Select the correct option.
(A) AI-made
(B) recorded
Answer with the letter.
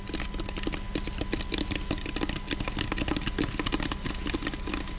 B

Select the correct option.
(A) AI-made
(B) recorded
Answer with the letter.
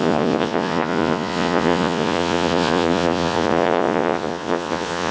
A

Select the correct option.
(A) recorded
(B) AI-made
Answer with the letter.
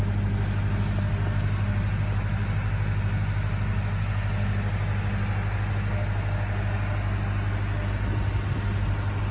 A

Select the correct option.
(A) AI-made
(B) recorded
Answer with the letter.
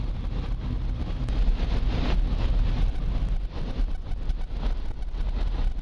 B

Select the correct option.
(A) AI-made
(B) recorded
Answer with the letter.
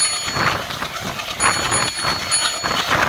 B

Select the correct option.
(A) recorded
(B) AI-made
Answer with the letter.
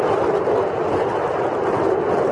A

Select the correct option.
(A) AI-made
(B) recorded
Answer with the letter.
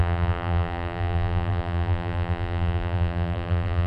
A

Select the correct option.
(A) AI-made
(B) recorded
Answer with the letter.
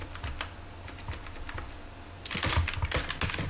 B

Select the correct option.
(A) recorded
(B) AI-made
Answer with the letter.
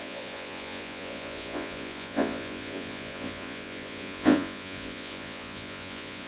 B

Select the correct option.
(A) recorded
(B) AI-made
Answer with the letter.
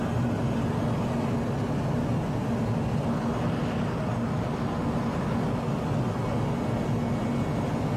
A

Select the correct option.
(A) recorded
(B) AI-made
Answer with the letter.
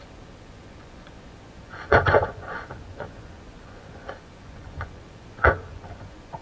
B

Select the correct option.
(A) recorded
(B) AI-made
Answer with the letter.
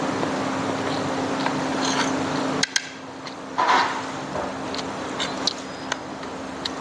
A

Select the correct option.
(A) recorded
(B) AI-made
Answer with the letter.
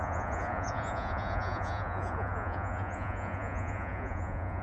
B